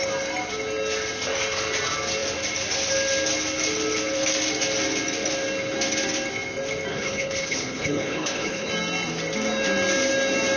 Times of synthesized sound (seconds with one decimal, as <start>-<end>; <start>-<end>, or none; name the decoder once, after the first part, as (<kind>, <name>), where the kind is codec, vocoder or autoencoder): 6.9-8.7 (codec, HILCodec)

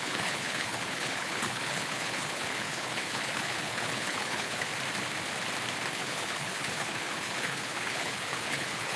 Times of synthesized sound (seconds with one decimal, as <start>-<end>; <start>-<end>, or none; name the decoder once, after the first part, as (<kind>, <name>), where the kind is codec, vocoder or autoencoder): 0.0-4.7 (codec, HILCodec); 5.9-9.0

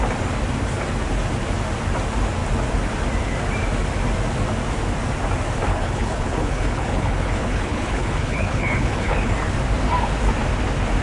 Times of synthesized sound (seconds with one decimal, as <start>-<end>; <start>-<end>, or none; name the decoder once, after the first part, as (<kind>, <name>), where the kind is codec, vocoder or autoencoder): 5.7-9.3 (codec, HILCodec)

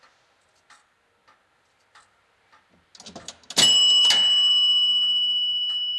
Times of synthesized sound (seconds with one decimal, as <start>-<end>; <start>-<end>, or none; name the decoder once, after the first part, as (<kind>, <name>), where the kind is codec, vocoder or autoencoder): none

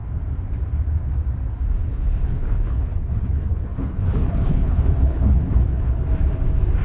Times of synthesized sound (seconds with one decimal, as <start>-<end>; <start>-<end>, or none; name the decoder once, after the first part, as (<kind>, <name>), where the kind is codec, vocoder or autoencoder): 1.9-6.0 (codec, HILCodec)